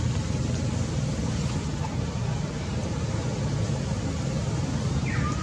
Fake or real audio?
real